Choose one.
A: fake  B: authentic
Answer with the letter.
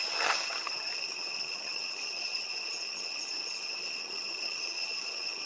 A